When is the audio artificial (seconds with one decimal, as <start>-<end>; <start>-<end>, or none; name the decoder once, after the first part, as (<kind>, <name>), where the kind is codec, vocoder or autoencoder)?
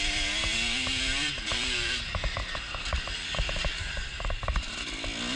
1.5-4.7 (vocoder, BigVGAN v2)